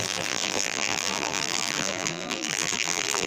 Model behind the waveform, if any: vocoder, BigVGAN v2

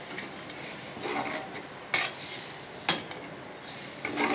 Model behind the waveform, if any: none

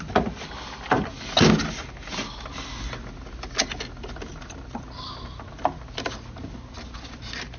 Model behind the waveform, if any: none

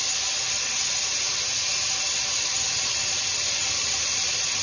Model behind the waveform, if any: none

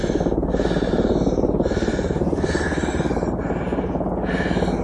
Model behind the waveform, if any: none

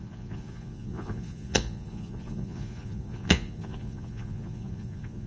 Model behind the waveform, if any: vocoder, Vocos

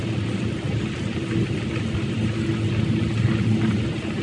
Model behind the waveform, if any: none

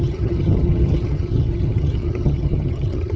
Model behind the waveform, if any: vocoder, HiFi-GAN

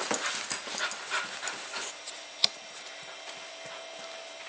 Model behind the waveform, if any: none